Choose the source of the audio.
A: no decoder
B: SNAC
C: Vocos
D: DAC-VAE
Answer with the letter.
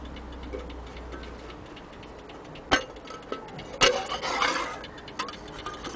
A